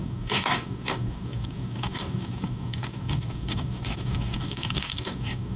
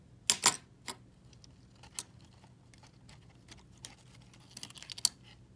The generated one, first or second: first